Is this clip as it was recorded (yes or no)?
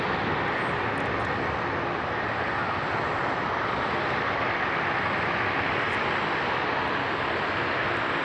yes